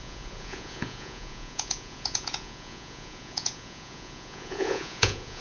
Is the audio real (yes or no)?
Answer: no